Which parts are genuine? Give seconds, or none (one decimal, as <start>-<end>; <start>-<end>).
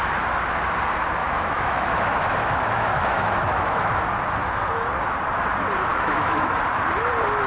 0.0-1.2; 4.0-5.9; 6.5-7.5